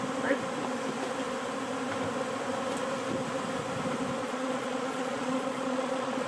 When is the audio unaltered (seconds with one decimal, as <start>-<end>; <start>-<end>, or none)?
0.0-4.2